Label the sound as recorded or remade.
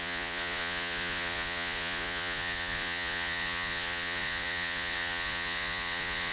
remade